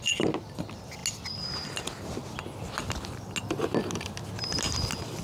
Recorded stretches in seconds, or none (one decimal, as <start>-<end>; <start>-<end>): 0.0-5.2